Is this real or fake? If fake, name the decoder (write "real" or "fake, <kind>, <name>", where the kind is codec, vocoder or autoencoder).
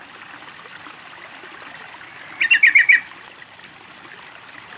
real